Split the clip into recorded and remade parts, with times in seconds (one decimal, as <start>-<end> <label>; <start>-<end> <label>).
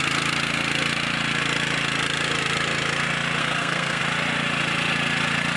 0.0-3.4 recorded; 3.4-4.0 remade; 4.0-5.6 recorded